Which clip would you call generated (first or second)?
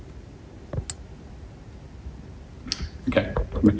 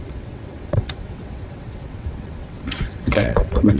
second